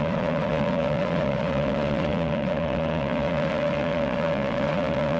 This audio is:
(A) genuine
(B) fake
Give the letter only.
B